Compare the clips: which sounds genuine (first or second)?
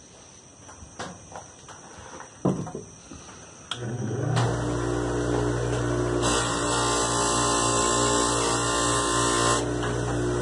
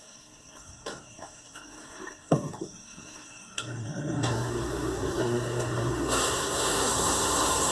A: first